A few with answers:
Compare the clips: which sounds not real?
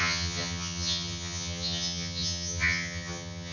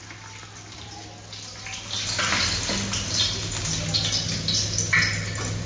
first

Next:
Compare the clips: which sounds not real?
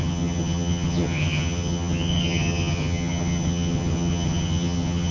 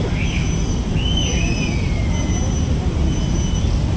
first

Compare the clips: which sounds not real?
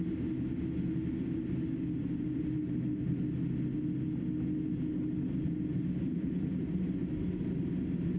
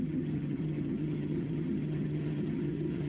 second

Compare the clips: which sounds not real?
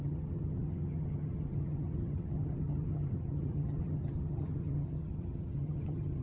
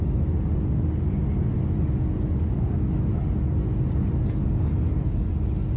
first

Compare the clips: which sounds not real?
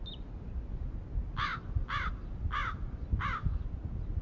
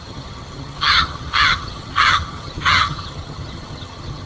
second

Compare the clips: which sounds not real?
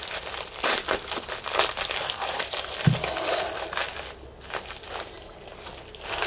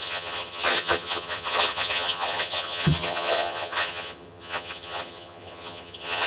second